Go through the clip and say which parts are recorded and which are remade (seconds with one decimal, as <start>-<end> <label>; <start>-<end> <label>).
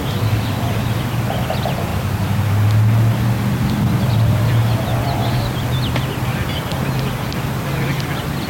0.0-1.9 remade; 1.9-4.0 recorded; 4.0-8.5 remade